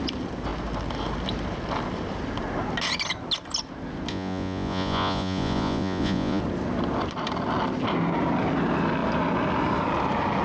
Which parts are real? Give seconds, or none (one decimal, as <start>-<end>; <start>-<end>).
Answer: 0.0-4.1; 6.4-10.4